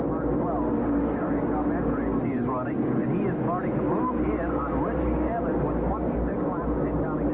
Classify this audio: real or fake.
real